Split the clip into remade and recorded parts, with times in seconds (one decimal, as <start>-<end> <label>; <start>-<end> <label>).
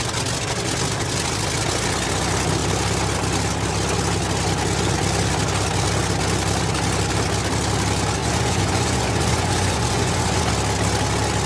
0.0-8.2 recorded; 8.2-10.5 remade; 10.5-11.5 recorded